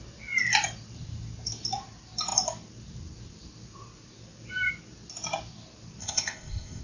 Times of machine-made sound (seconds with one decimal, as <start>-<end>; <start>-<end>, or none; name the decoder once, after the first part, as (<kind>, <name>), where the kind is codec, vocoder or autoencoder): 6.0-6.8 (codec, ZipCodec)